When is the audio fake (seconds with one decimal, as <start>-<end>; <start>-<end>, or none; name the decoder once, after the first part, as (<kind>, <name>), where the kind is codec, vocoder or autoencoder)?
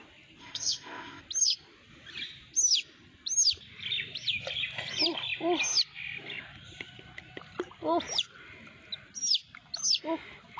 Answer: 0.4-1.2 (codec, ZipCodec)